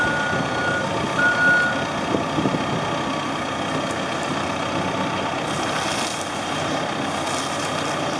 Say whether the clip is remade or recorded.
recorded